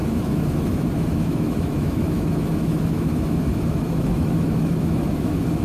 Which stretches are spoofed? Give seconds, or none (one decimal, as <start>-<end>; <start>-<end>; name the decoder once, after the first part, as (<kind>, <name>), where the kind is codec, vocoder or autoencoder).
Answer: 0.0-5.6 (autoencoder, DAC-VAE)